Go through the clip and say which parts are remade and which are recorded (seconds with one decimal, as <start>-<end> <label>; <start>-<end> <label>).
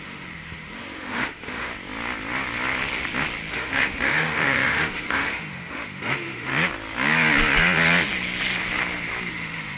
0.0-1.7 remade; 1.7-3.5 recorded; 3.5-6.5 remade; 6.5-9.3 recorded; 9.3-9.8 remade